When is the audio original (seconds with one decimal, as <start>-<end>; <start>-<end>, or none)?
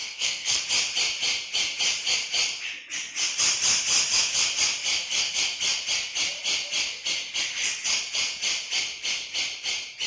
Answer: 0.6-10.1